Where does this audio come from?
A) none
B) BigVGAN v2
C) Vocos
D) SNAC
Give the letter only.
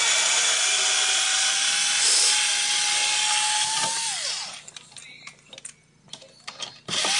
A